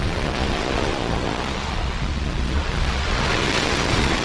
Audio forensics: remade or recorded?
remade